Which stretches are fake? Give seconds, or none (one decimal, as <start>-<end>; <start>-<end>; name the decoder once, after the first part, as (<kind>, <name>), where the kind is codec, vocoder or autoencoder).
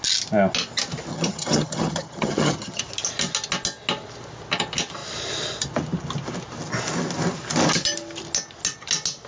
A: 1.1-2.8 (vocoder, HiFi-GAN)